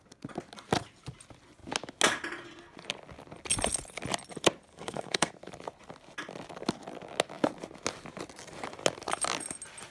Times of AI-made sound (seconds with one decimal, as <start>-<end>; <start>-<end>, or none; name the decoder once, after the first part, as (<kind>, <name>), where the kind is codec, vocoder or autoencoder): 4.7-5.3 (codec, SNAC)

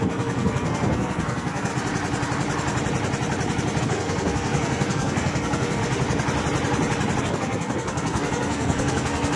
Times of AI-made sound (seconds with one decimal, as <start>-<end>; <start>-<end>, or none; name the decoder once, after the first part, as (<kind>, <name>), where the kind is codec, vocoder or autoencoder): 0.0-1.7 (codec, SNAC); 3.8-5.8; 7.2-9.4

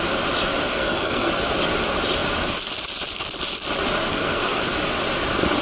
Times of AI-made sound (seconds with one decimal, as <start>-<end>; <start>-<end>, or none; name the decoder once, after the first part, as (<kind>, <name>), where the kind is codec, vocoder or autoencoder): 0.7-1.3 (codec, SNAC); 4.1-4.6

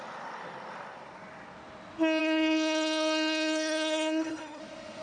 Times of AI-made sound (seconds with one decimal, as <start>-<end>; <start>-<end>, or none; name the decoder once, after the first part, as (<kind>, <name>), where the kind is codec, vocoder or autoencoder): 2.2-4.6 (codec, SNAC)

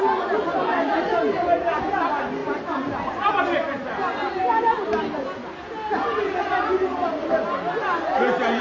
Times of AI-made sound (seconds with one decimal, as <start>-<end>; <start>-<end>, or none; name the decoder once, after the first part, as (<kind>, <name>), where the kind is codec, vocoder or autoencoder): none

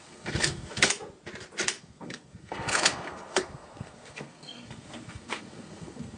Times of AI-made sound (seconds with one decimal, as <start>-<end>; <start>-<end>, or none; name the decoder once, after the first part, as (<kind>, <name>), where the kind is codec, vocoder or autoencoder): 0.0-0.9 (codec, SNAC); 1.8-6.2

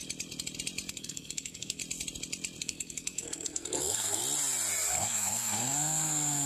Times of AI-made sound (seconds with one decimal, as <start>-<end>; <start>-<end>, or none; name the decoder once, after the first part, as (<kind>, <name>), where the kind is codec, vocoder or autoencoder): 0.9-1.8 (codec, SNAC); 2.6-4.2; 4.9-6.5

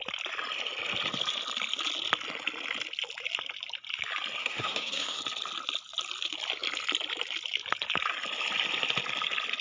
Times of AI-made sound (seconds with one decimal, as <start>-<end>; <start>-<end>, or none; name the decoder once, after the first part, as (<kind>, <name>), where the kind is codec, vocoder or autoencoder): 4.4-5.2 (codec, SNAC)